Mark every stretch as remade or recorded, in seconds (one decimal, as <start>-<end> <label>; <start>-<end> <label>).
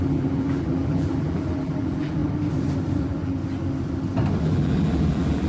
0.0-2.2 remade; 2.2-3.0 recorded; 3.0-3.4 remade; 3.4-4.4 recorded; 4.4-5.5 remade